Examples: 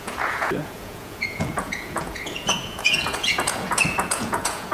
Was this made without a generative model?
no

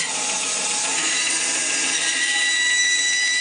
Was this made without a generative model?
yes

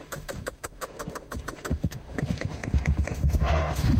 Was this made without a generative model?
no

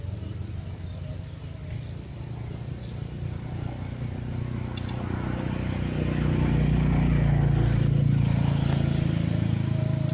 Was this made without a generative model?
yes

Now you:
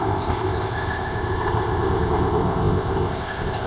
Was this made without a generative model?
no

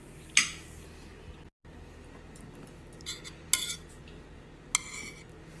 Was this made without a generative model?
yes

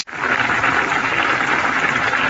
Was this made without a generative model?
no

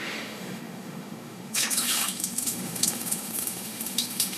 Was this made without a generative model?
no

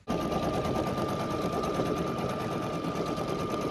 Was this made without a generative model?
yes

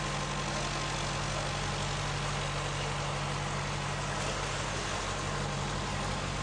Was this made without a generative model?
yes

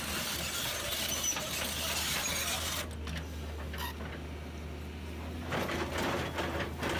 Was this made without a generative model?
yes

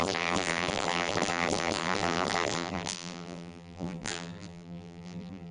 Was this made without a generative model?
no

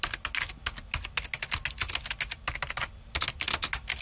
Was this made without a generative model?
yes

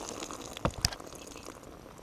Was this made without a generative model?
yes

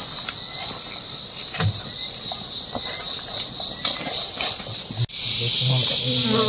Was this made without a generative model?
yes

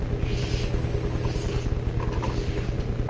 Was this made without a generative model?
yes